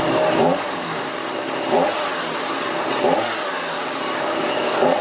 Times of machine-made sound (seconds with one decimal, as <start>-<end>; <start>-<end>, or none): 0.0-1.2; 4.2-5.0